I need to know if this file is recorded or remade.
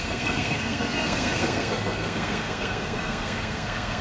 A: remade